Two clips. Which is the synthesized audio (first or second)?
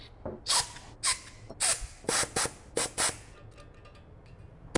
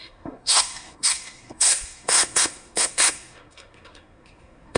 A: second